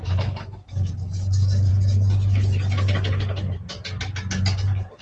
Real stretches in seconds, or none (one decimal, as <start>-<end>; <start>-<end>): 1.7-5.0